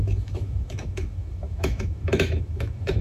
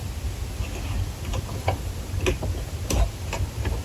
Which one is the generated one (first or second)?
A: first